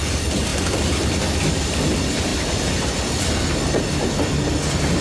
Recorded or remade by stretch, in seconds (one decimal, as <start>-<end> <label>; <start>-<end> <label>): 0.0-5.0 recorded